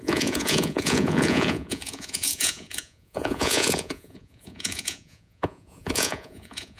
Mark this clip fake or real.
fake